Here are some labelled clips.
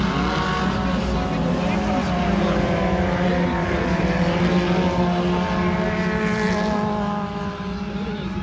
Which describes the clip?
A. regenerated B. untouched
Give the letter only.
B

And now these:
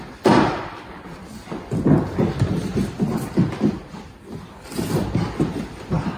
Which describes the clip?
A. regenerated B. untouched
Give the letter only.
A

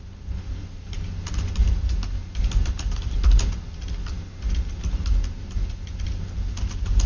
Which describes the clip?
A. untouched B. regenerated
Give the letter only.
A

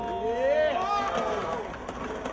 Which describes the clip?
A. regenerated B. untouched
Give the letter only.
B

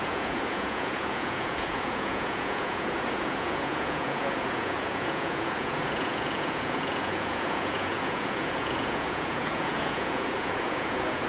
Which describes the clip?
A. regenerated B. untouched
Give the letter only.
A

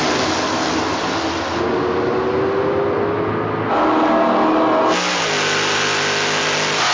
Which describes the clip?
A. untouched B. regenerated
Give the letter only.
A